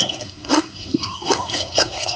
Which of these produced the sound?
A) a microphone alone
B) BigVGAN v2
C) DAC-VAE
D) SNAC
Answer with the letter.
D